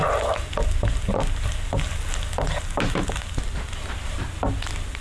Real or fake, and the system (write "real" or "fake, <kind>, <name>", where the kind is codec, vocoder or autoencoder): real